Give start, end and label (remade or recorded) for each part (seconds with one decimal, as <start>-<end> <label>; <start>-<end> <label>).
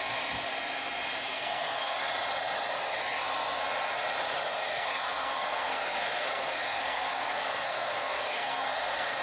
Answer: 0.0-1.2 recorded; 1.2-2.1 remade; 2.1-4.7 recorded; 4.7-9.2 remade